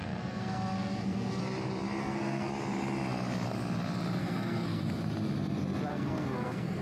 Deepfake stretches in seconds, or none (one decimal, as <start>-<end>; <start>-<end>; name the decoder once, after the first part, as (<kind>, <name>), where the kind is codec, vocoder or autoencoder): 0.0-1.4 (codec, SNAC); 2.0-2.5; 4.2-4.8; 5.9-6.8